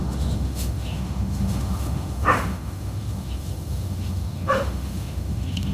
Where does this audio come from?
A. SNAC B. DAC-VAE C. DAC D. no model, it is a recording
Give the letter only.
B